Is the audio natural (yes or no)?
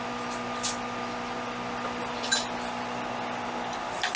yes